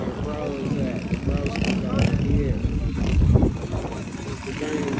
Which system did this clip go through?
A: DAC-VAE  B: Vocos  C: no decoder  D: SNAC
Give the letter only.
C